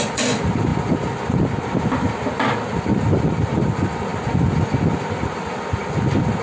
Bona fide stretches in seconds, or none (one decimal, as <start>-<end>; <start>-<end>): 0.0-2.9; 3.6-6.4